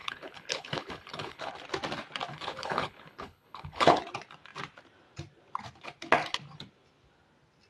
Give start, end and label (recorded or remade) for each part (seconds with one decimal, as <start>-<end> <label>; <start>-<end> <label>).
0.0-1.5 remade; 1.5-2.3 recorded; 2.3-4.0 remade; 4.0-7.7 recorded